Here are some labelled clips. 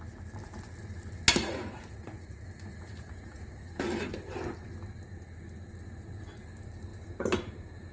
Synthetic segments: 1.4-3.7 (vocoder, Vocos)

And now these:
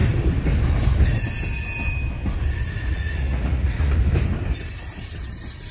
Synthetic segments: 2.9-4.0 (vocoder, Vocos)

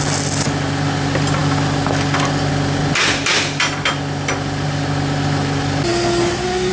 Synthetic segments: none

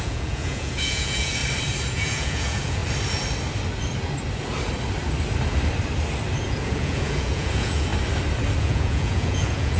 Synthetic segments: 0.0-1.4 (vocoder, Vocos); 1.9-2.8; 6.4-7.9; 8.6-9.8

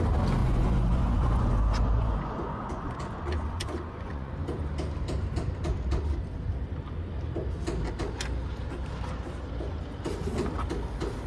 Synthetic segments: 0.4-4.3 (vocoder, Vocos)

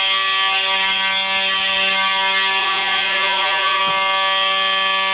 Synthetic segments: 2.6-3.8 (vocoder, Vocos)